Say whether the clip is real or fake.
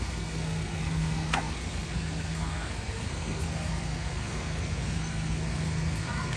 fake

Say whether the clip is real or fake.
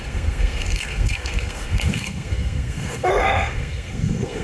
fake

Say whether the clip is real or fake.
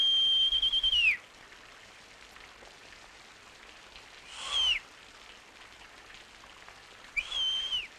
real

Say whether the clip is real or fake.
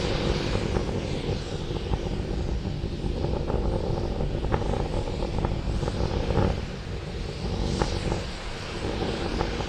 real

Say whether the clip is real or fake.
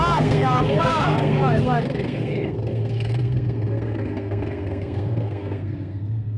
fake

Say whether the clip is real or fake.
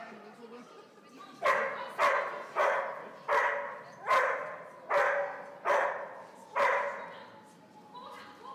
real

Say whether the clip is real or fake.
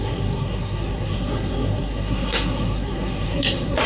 fake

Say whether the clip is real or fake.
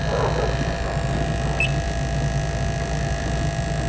real